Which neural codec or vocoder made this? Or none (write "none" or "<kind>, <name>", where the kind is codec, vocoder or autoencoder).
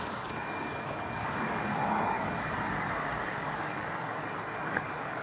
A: codec, DAC